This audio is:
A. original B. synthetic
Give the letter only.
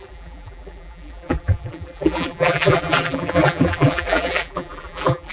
B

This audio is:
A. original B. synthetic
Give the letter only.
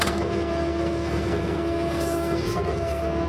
B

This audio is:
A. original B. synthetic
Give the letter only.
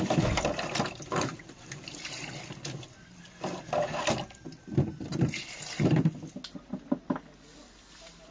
A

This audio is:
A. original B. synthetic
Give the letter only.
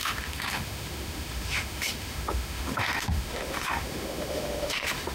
B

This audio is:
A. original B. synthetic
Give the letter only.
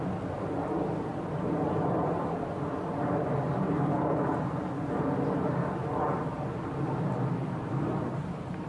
A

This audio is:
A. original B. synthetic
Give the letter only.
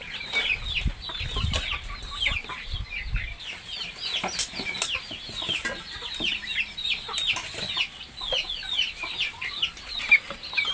A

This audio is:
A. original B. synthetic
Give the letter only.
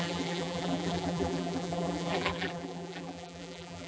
B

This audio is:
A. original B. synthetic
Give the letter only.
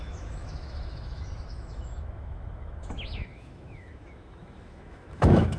B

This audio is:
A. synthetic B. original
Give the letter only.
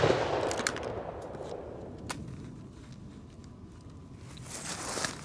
B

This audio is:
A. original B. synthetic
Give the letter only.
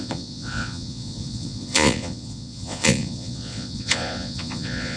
B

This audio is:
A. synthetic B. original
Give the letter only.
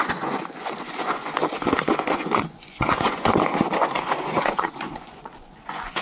A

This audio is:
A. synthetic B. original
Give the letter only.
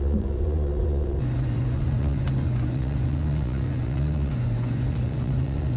A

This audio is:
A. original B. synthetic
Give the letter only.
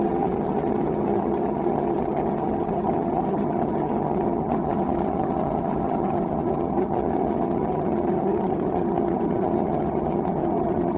B